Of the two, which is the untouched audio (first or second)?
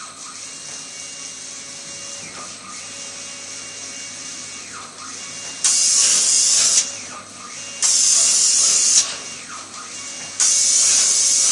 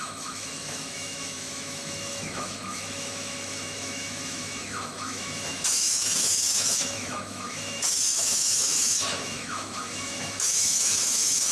first